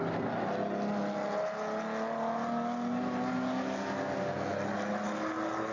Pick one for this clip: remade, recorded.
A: recorded